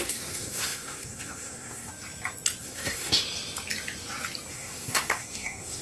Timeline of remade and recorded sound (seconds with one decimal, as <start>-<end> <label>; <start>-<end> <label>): 0.0-1.9 remade; 1.9-2.6 recorded; 2.6-3.2 remade; 3.2-4.5 recorded; 4.5-5.8 remade